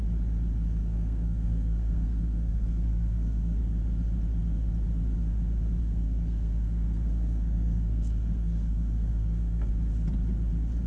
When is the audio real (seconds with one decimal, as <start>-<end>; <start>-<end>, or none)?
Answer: 0.0-0.8; 3.6-5.8; 9.7-10.9